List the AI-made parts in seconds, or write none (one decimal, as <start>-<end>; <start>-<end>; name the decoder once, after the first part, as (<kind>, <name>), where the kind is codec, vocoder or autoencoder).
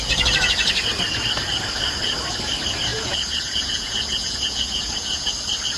2.9-5.3 (vocoder, Vocos)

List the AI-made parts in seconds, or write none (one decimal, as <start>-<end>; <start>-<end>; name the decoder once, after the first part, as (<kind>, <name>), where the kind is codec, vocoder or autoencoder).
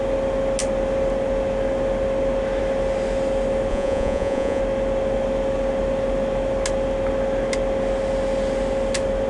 3.7-4.6 (vocoder, Vocos)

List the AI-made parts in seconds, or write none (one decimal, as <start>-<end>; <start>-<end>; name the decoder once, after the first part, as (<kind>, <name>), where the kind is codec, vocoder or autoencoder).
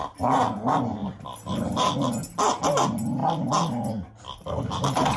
none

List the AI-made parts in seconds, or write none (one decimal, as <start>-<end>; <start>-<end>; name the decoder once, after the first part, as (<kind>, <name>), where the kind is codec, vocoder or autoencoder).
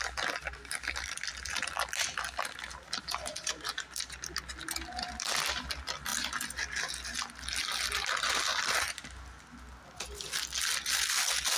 none